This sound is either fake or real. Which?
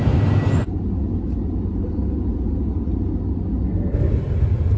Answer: real